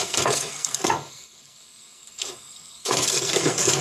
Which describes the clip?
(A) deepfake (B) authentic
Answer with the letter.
A